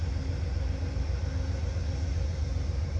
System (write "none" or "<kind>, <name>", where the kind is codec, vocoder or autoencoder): none